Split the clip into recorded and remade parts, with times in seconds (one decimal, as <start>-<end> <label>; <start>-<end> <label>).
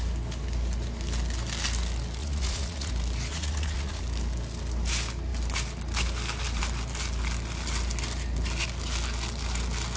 0.0-2.2 recorded; 2.2-2.9 remade; 2.9-3.3 recorded; 3.3-4.0 remade; 4.0-10.0 recorded